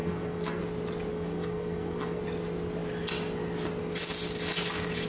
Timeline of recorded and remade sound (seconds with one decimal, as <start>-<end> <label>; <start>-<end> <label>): 0.0-0.6 remade; 0.6-1.1 recorded; 1.1-2.2 remade; 2.2-5.1 recorded